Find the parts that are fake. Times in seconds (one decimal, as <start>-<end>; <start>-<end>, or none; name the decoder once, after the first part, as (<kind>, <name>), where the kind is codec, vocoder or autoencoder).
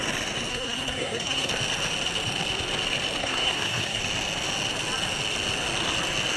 0.5-1.5 (codec, SNAC); 3.2-4.0